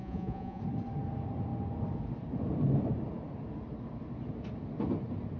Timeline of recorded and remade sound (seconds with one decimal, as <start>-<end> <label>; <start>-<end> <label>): 0.0-0.6 remade; 0.6-5.4 recorded